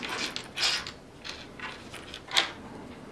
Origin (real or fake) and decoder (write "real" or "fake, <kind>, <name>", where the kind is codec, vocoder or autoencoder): real